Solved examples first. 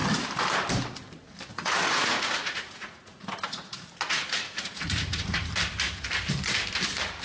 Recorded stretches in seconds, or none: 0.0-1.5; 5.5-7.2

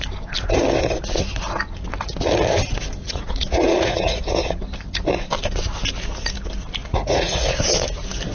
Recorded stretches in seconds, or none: 0.0-3.0; 4.2-6.8; 7.6-8.3

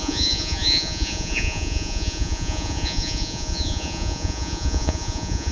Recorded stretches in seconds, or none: none

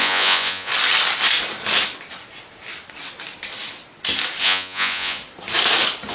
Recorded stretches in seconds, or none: 0.7-4.4; 5.2-6.1

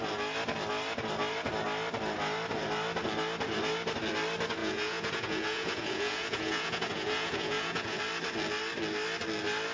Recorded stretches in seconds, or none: 0.0-4.6; 8.0-9.7

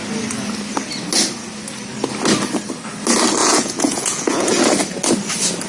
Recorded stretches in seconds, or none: 0.0-3.4; 4.6-5.7

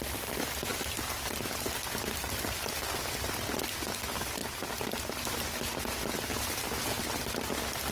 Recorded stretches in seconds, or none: 0.0-7.9